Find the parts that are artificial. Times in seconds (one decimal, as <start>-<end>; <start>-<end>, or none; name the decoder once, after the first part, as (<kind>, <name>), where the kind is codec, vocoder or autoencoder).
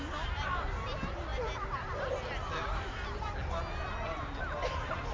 none